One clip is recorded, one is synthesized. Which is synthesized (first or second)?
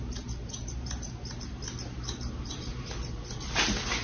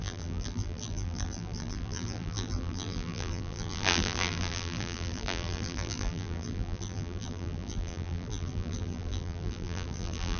second